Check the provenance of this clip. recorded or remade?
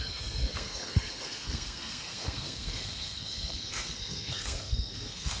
remade